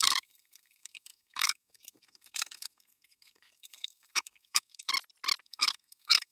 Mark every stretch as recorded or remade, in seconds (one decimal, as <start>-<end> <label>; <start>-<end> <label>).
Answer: 0.0-4.9 remade; 4.9-5.4 recorded; 5.4-6.3 remade